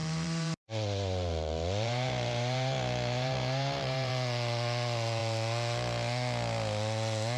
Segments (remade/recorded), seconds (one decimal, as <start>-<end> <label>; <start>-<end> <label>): 0.0-4.1 remade; 4.1-7.4 recorded